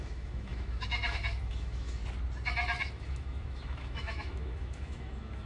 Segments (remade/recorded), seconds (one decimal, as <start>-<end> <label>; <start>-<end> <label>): 0.0-2.0 remade; 2.0-2.9 recorded; 2.9-5.5 remade